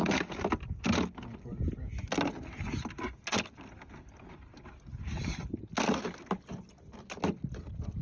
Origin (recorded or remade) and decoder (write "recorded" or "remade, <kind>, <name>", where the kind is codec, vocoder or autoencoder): recorded